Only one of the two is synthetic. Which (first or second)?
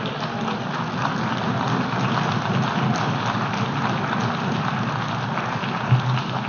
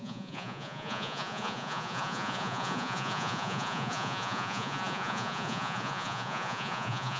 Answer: second